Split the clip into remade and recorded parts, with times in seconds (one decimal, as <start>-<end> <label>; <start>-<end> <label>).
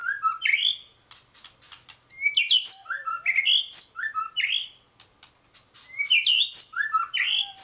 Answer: 0.0-7.6 recorded